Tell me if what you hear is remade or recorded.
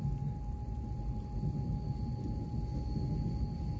recorded